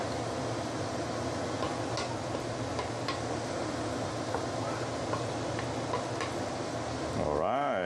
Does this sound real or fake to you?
real